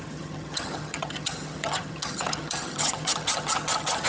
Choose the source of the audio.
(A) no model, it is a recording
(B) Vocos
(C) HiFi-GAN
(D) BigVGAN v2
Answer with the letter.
C